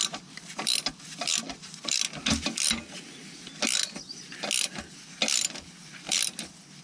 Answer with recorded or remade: recorded